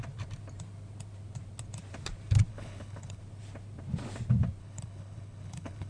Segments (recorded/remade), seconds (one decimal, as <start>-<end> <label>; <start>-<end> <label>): 0.0-2.5 recorded; 2.5-3.2 remade; 3.2-4.6 recorded; 4.6-5.9 remade